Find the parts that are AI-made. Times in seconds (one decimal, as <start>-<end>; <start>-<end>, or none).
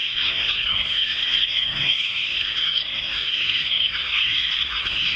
0.0-5.2